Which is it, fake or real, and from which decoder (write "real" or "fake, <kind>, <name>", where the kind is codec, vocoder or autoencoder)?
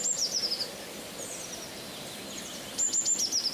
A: real